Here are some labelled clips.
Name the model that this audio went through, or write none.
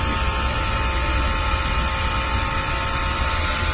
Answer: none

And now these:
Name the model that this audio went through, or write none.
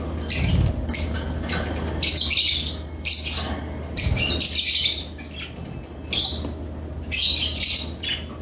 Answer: none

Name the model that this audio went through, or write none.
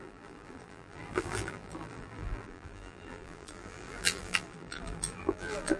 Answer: vocoder, BigVGAN v2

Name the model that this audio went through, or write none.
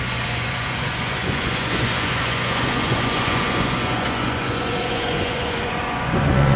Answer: vocoder, Vocos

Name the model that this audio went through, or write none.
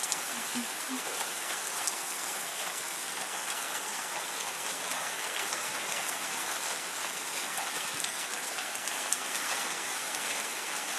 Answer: codec, SNAC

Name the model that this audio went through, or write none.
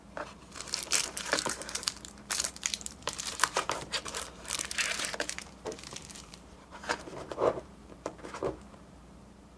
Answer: vocoder, BigVGAN v2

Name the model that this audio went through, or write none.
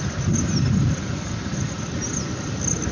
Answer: none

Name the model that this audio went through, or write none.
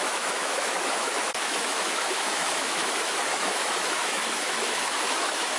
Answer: autoencoder, DAC-VAE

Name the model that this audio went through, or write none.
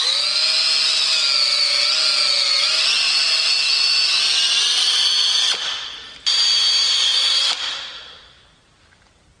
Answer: none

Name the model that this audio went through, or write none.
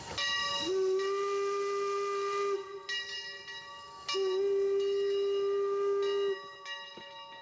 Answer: none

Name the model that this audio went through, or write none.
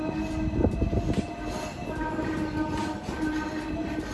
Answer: none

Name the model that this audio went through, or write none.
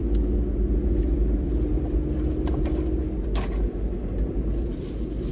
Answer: none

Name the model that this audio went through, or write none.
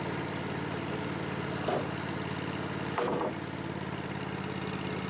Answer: none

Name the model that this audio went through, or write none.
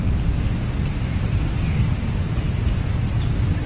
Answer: none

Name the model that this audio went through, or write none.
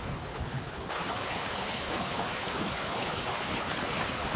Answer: codec, HILCodec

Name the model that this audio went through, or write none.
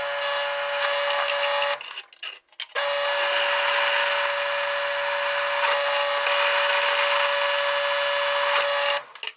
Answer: none